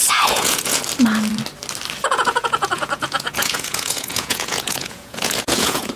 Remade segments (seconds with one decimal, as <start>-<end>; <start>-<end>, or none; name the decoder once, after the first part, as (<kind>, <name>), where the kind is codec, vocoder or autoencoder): 0.0-0.8 (vocoder, Vocos); 2.1-6.0